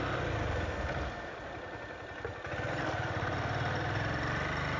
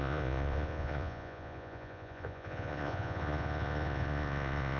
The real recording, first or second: first